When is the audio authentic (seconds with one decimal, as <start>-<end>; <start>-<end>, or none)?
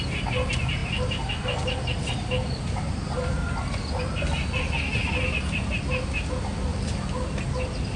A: 0.0-8.0